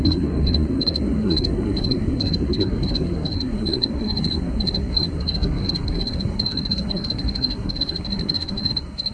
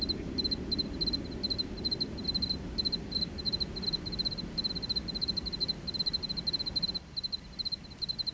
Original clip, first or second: second